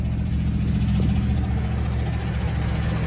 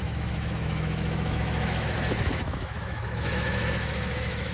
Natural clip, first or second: first